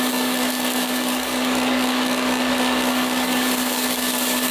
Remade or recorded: remade